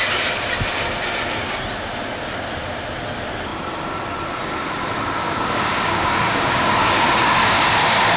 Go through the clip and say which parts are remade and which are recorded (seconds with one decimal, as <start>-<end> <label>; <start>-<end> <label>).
0.0-5.2 recorded; 5.2-7.6 remade; 7.6-8.2 recorded